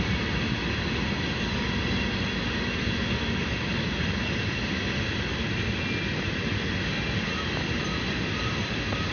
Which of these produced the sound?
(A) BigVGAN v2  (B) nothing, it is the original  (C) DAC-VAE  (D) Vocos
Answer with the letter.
B